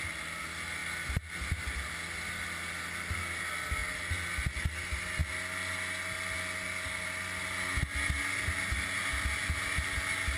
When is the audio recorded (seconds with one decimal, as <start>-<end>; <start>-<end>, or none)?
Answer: 0.0-10.4